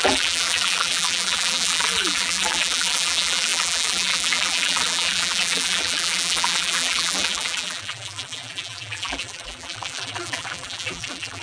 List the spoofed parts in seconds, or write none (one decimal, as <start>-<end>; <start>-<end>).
0.0-11.4

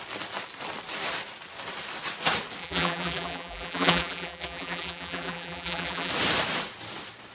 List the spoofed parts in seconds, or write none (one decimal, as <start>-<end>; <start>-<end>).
2.6-6.1

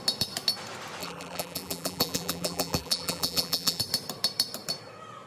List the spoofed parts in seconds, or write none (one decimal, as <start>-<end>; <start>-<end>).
1.0-3.8

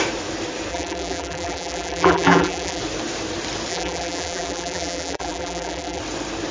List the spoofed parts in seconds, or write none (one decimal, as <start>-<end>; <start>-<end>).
0.7-2.8; 3.7-6.0

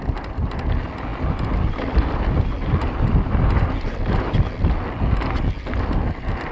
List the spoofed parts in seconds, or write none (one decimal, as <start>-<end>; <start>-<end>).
1.1-4.4

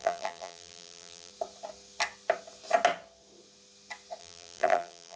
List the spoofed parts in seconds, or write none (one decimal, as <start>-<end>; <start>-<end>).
0.0-1.3; 4.2-5.2

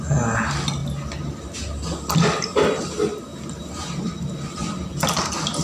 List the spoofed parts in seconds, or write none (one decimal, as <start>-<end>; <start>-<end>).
3.3-4.3

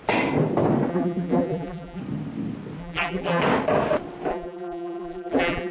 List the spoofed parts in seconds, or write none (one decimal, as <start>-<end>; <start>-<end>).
0.9-2.0; 2.8-3.4; 4.3-5.7